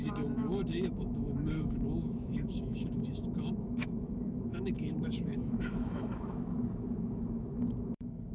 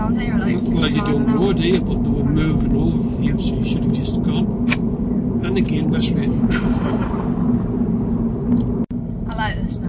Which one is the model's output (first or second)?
first